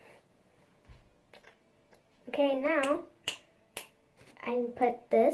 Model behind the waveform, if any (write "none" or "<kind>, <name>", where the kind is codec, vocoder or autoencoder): vocoder, Vocos